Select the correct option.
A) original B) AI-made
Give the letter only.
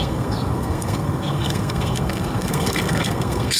B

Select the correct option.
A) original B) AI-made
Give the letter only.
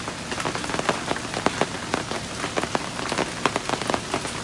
A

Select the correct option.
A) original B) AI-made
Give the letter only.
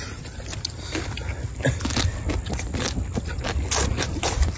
A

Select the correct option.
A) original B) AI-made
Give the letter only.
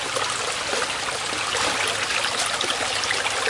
A